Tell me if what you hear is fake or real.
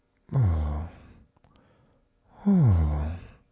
real